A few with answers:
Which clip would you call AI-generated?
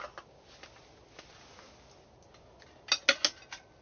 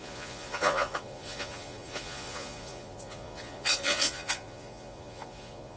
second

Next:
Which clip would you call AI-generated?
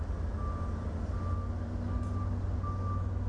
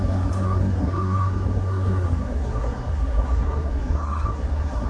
second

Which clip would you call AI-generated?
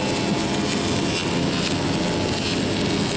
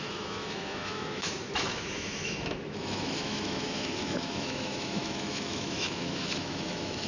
second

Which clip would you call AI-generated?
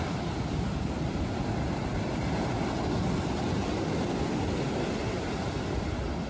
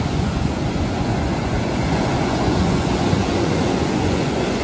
second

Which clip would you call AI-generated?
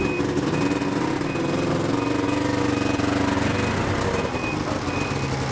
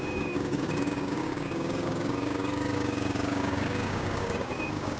second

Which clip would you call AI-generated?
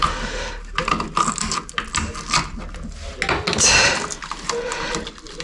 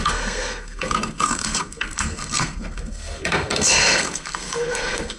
second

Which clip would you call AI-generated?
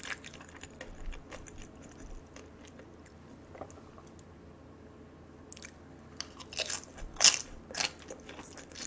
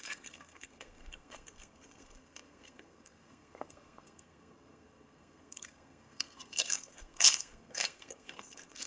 second